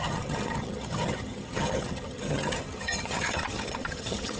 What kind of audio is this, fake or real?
fake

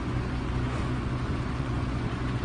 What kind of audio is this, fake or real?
fake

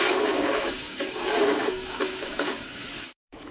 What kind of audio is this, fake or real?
fake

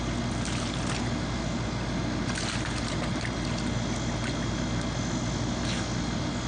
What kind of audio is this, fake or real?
real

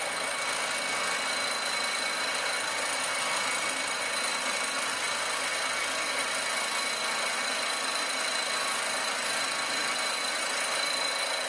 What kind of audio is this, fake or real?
real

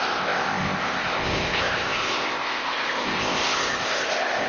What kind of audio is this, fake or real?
fake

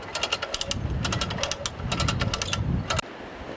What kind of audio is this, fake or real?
real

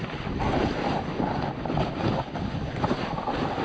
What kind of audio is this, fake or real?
real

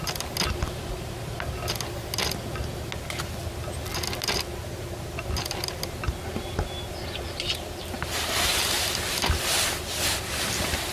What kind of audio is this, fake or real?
real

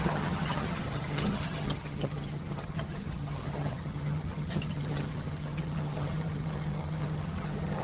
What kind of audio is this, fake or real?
fake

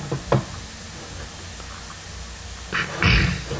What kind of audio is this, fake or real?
real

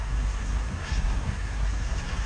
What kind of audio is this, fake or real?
fake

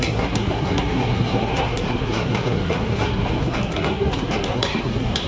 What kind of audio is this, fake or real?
fake